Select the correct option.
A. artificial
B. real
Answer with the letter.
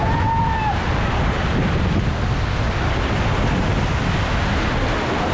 B